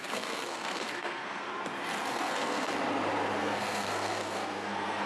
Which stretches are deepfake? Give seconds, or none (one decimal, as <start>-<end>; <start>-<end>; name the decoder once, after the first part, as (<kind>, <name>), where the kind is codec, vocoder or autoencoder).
0.0-1.5 (codec, SNAC); 2.1-2.7; 3.4-5.1